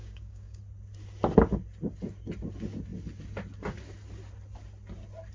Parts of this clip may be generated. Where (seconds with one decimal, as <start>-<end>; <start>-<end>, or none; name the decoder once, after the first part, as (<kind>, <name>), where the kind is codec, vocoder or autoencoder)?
0.0-0.6 (codec, DAC)